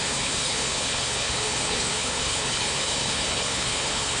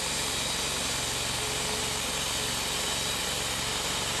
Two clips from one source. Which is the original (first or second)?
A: second